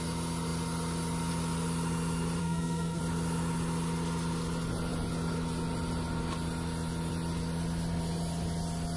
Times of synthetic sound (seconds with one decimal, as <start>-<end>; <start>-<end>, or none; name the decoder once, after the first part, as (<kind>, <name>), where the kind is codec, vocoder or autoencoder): 2.4-3.0 (codec, SNAC)